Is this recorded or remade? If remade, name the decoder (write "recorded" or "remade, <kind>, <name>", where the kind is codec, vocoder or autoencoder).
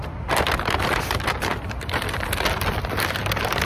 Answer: recorded